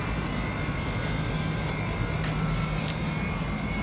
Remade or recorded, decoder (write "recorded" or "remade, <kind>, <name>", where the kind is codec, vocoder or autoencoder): remade, vocoder, BigVGAN v2